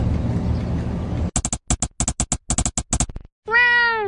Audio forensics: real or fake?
real